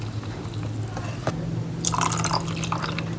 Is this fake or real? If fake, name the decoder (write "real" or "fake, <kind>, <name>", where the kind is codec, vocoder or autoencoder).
real